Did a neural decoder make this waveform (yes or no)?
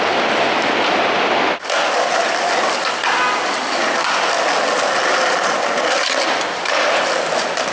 no